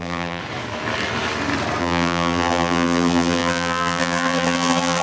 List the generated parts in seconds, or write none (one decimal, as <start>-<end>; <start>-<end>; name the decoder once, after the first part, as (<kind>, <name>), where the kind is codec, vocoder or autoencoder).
0.0-0.4 (vocoder, BigVGAN v2); 1.8-5.0